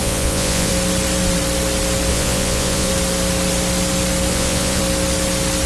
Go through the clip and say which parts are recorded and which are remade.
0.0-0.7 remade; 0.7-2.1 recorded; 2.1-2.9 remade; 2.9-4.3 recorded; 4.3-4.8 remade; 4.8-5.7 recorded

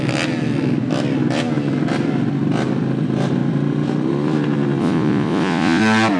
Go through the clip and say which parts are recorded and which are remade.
0.0-4.8 recorded; 4.8-5.8 remade; 5.8-6.2 recorded

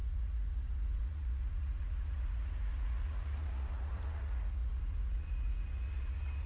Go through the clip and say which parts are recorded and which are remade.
0.0-6.5 remade

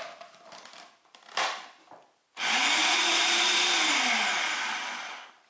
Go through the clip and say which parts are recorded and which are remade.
0.0-2.6 recorded; 2.6-3.6 remade; 3.6-5.5 recorded

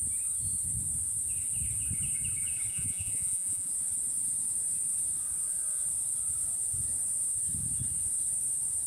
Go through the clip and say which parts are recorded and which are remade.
0.0-2.7 recorded; 2.7-3.7 remade; 3.7-8.9 recorded

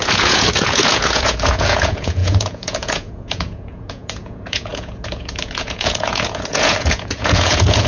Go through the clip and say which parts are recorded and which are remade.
0.0-7.9 remade